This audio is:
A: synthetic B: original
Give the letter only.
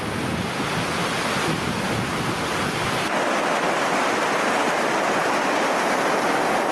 B